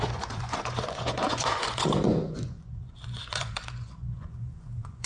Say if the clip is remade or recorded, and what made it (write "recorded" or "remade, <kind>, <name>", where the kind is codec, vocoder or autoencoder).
remade, vocoder, Vocos